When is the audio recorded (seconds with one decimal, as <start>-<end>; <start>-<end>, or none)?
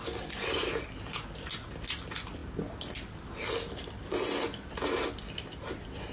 0.0-6.1